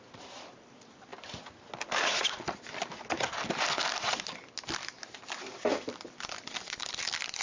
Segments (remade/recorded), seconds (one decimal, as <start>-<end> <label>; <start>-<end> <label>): 0.0-1.1 remade; 1.1-5.4 recorded; 5.4-7.4 remade